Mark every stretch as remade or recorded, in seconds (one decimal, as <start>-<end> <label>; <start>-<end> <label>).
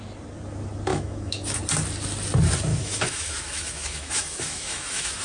0.0-0.9 recorded; 0.9-1.6 remade; 1.6-2.7 recorded; 2.7-5.2 remade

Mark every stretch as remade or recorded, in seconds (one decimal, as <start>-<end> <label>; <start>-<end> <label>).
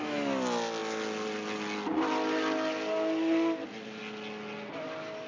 0.0-5.3 recorded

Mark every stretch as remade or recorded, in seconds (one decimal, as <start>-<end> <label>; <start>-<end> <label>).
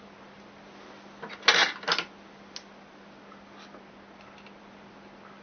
0.0-5.4 recorded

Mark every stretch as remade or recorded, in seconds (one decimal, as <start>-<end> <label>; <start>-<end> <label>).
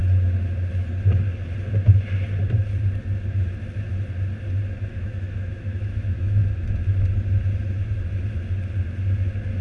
0.0-4.9 recorded; 4.9-6.4 remade; 6.4-9.6 recorded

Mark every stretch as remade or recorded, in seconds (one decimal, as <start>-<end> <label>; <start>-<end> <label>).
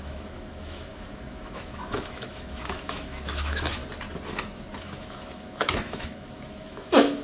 0.0-3.8 remade; 3.8-4.8 recorded; 4.8-7.2 remade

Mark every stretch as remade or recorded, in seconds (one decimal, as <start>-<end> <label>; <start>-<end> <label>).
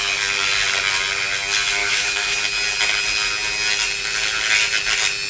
0.0-1.8 recorded; 1.8-2.4 remade; 2.4-5.3 recorded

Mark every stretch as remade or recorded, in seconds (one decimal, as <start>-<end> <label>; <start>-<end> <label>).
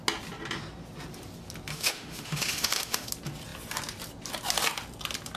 0.0-1.7 recorded; 1.7-3.1 remade; 3.1-5.4 recorded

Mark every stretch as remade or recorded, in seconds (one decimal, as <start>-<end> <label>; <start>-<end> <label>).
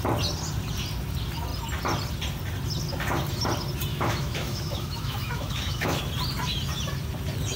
0.0-3.9 recorded; 3.9-6.0 remade; 6.0-7.6 recorded